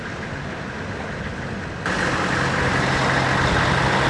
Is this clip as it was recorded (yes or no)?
yes